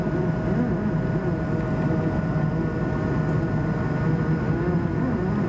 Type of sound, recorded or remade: recorded